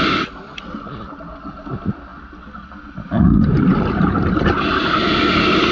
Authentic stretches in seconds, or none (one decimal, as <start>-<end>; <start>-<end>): 0.0-5.7